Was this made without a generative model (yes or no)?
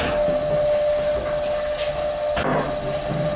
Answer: yes